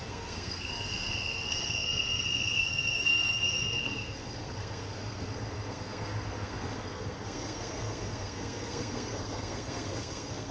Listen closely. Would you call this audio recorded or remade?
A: remade